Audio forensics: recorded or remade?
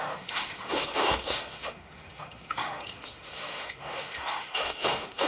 remade